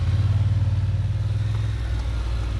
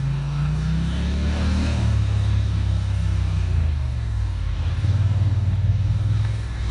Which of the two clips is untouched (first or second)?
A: first